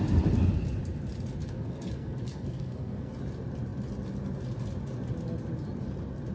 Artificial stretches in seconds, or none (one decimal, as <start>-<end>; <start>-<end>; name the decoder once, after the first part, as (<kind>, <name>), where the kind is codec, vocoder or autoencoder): 1.4-3.1 (codec, SNAC)